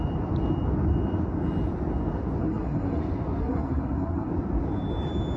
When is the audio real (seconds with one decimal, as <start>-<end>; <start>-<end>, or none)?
0.0-2.4; 3.0-3.4; 4.3-5.4